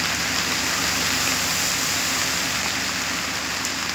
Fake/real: real